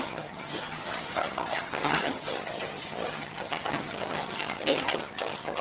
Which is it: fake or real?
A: fake